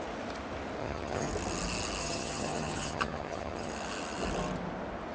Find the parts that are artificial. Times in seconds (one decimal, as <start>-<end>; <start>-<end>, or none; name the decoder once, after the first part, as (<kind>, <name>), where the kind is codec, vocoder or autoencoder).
0.8-1.3 (vocoder, HiFi-GAN); 2.0-3.7